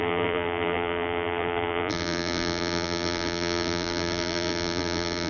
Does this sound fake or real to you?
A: fake